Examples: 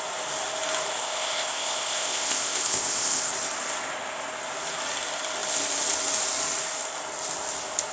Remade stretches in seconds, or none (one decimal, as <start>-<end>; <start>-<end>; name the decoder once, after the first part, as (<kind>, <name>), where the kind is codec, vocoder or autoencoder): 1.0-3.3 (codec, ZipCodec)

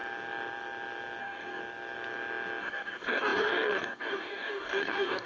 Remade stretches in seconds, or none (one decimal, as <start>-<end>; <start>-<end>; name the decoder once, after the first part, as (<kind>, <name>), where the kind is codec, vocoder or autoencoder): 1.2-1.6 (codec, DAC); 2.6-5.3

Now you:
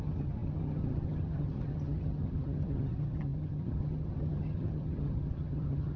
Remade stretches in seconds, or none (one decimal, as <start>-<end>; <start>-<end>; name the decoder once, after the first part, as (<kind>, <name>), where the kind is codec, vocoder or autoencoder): 0.0-6.0 (vocoder, HiFi-GAN)

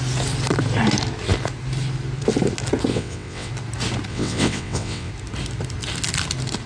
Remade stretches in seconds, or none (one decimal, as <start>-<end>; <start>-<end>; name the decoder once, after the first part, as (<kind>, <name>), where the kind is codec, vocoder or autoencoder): 2.9-3.5 (vocoder, WaveNeXt); 4.1-5.1